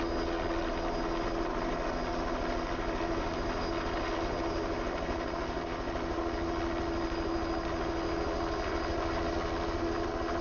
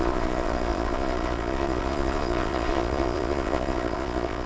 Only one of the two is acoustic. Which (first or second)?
first